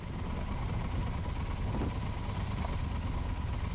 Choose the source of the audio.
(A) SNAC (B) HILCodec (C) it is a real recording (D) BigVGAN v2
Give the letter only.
C